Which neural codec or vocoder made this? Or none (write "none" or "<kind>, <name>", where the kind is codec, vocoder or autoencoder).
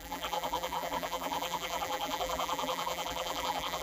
vocoder, BigVGAN v2